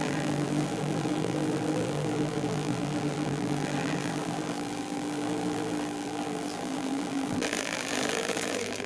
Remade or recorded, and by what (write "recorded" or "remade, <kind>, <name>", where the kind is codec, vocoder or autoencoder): remade, vocoder, BigVGAN v2